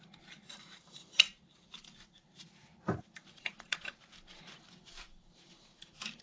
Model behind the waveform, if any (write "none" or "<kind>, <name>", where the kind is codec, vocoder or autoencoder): vocoder, BigVGAN v2